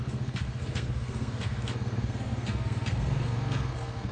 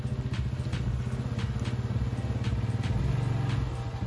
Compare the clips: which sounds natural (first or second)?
second